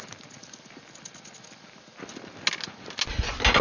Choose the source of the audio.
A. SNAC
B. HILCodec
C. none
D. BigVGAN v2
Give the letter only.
C